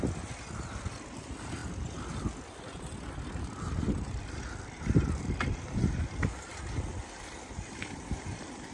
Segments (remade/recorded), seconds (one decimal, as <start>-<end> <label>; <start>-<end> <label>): 0.0-8.7 recorded